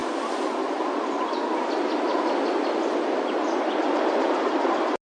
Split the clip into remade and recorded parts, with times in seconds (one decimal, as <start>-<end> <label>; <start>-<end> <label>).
0.0-5.1 recorded